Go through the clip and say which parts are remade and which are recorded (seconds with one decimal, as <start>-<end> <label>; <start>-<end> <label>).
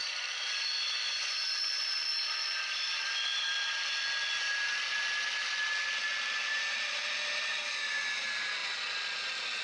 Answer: 0.0-3.4 remade; 3.4-9.6 recorded